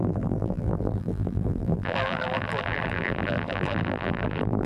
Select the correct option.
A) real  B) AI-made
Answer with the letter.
B